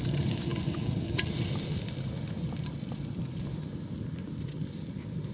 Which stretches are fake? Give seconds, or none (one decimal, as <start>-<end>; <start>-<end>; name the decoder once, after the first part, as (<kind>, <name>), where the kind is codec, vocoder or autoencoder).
none